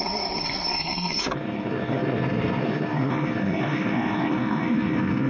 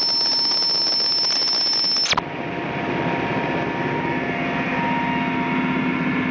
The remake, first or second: first